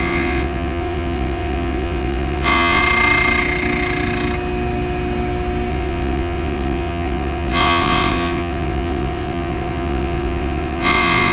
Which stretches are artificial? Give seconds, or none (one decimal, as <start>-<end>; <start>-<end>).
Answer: 0.0-2.8; 5.7-11.3